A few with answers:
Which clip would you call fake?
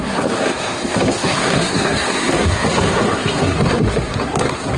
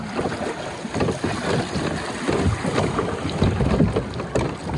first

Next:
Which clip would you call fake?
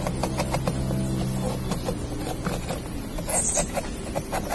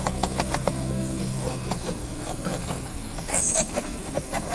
second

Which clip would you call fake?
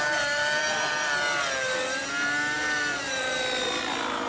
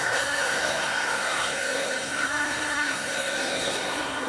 second